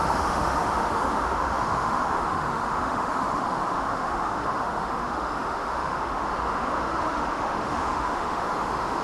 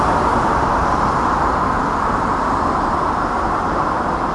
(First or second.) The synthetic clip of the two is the first